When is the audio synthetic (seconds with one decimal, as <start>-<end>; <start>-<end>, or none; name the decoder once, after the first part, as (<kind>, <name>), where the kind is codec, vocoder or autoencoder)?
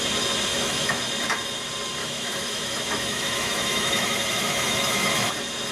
0.5-1.0 (autoencoder, DAC-VAE); 2.0-5.3